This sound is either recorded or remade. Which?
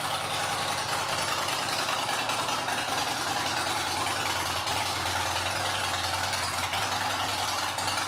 recorded